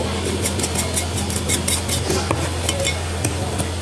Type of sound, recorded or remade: recorded